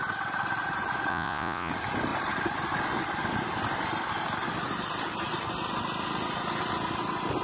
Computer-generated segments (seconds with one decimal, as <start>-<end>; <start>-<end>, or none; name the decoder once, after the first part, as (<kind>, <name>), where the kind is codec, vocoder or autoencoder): 1.1-1.7 (vocoder, Vocos)